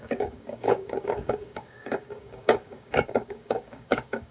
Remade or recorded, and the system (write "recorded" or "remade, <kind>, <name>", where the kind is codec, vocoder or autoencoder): remade, codec, DAC